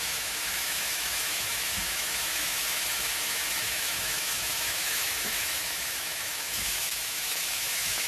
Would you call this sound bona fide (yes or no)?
no